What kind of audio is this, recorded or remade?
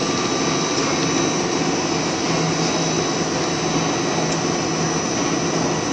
recorded